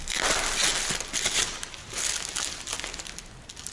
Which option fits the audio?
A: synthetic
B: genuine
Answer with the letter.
B